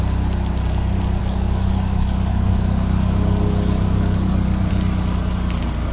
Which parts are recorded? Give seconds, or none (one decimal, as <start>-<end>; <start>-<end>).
0.0-1.2; 4.7-5.9